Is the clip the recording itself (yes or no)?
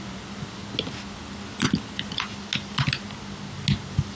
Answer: yes